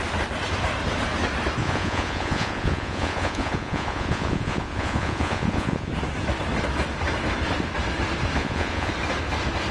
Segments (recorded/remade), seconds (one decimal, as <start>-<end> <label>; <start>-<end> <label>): 0.0-1.6 recorded; 1.6-5.9 remade; 5.9-8.4 recorded; 8.4-8.9 remade; 8.9-9.7 recorded